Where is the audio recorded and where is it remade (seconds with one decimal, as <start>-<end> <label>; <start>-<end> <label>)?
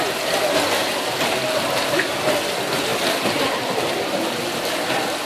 0.0-5.3 recorded